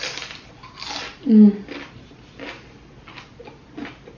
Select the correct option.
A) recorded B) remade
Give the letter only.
A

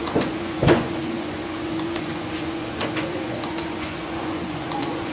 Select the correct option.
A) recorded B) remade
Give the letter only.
B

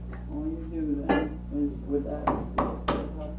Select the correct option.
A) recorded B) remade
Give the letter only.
A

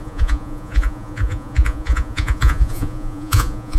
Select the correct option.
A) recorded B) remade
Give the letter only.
B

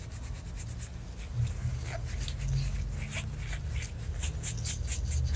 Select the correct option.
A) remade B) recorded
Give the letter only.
B